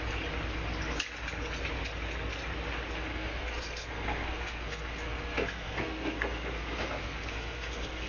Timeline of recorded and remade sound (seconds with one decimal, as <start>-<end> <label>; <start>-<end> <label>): 0.0-3.1 recorded; 3.1-8.1 remade